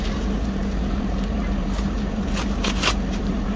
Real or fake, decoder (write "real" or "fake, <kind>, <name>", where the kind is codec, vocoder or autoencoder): fake, vocoder, BigVGAN v2